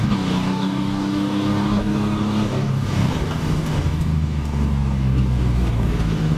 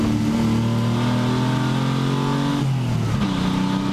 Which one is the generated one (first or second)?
first